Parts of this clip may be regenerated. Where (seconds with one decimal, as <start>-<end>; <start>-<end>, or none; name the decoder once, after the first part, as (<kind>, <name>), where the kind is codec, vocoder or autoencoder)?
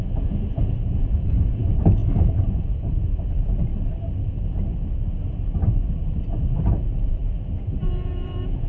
0.0-3.7 (vocoder, Vocos); 6.4-7.2; 7.8-8.7